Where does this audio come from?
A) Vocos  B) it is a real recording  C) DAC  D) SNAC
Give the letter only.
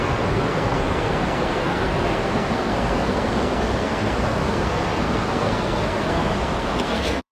D